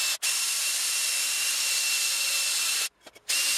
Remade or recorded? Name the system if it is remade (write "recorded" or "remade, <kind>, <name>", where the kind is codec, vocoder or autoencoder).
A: recorded